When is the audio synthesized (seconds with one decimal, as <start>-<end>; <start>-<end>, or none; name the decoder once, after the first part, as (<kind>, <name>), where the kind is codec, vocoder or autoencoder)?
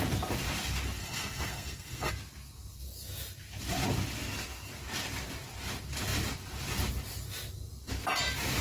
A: 1.0-2.1 (codec, SNAC)